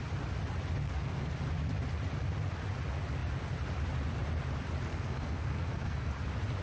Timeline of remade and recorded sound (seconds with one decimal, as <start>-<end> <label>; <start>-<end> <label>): 0.0-0.8 recorded; 0.8-1.3 remade; 1.3-4.9 recorded; 4.9-6.1 remade; 6.1-6.6 recorded